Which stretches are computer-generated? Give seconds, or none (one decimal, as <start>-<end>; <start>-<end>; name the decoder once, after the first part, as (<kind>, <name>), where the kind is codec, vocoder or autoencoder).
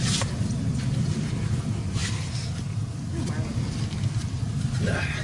none